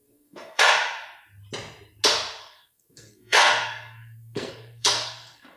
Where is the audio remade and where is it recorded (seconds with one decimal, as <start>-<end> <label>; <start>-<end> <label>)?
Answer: 0.0-0.7 remade; 0.7-2.4 recorded; 2.4-5.6 remade